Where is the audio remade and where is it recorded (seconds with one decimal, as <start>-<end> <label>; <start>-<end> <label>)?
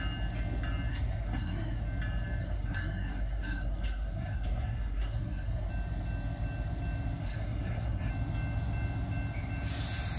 0.0-0.9 recorded; 0.9-1.8 remade; 1.8-2.4 recorded; 2.4-5.7 remade; 5.7-7.2 recorded; 7.2-8.1 remade; 8.1-10.2 recorded